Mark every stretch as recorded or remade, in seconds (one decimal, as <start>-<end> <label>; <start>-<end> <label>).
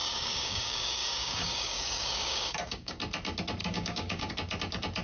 0.0-3.0 remade; 3.0-3.6 recorded; 3.6-4.3 remade; 4.3-5.0 recorded